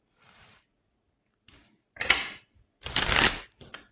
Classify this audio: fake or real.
fake